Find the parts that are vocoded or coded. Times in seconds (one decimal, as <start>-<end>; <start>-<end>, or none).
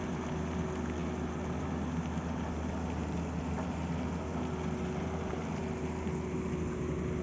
none